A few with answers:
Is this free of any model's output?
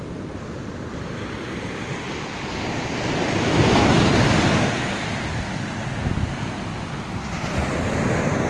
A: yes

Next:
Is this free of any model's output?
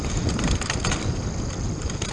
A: no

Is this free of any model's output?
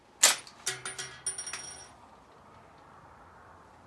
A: yes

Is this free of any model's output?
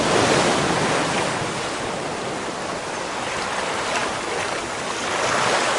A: yes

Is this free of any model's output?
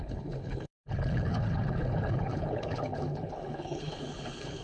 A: no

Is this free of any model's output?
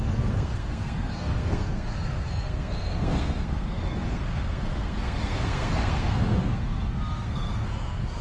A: no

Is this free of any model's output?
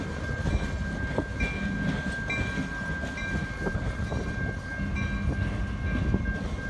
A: yes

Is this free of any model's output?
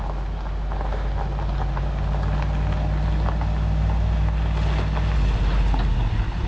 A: yes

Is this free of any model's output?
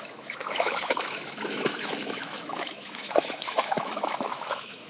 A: no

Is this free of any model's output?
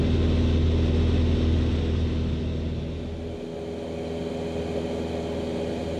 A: yes